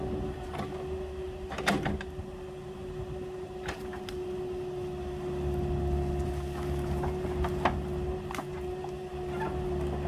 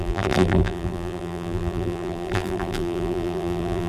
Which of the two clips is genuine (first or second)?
first